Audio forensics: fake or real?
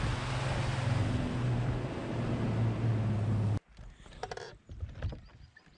real